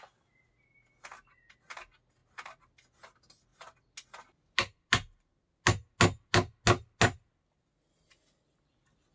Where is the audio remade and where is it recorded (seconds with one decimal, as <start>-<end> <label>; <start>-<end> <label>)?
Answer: 0.0-9.1 recorded